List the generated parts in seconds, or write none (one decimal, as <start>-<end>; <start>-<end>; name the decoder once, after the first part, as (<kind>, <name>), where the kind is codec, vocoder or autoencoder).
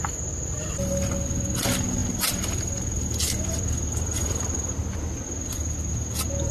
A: none